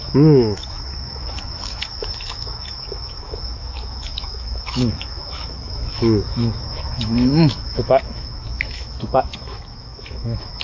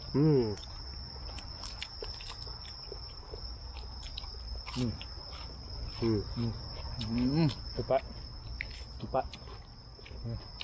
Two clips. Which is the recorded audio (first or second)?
second